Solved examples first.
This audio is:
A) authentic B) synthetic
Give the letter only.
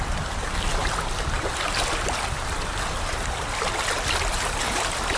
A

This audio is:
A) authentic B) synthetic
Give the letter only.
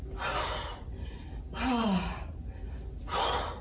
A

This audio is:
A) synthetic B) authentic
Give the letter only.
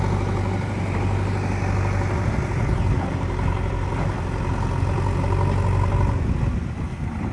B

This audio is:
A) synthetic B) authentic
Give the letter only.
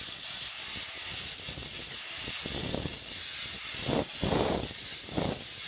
B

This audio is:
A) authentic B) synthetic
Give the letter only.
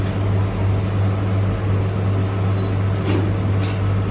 A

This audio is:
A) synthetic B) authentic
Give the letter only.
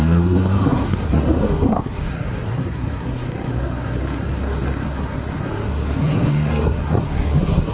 A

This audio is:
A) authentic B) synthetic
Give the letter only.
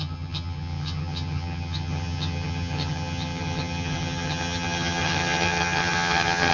B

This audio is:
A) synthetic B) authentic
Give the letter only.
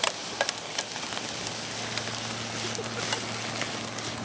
B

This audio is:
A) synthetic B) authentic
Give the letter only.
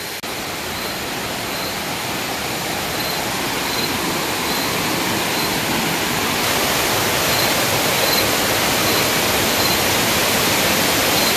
B